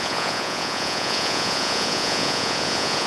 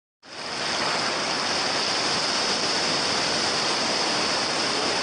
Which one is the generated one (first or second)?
first